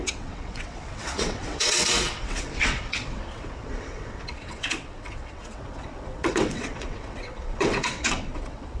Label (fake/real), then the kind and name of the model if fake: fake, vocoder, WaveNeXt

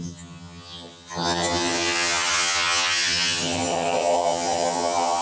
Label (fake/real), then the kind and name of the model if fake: fake, vocoder, HiFi-GAN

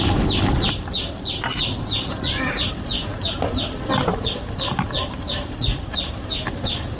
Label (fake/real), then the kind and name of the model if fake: fake, vocoder, BigVGAN v2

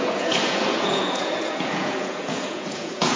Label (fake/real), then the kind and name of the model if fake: fake, vocoder, Vocos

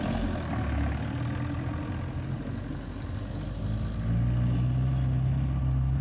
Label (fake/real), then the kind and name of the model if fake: real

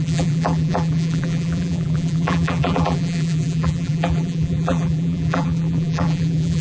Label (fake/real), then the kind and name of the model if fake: fake, vocoder, BigVGAN v2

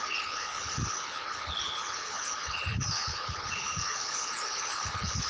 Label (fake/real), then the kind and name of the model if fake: fake, codec, HILCodec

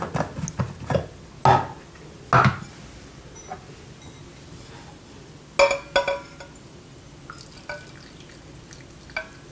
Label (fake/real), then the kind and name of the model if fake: real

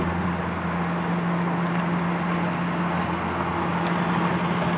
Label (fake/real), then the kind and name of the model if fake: real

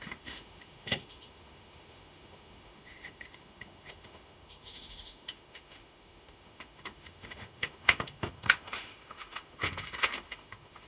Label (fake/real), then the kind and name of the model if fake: fake, autoencoder, DAC-VAE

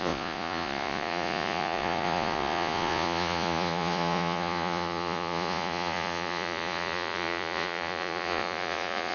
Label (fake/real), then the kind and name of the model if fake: fake, vocoder, Vocos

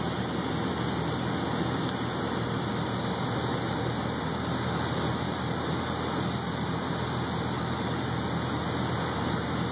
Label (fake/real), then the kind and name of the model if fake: real